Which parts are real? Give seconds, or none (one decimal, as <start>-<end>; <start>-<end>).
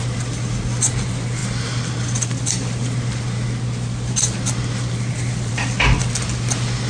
0.0-6.9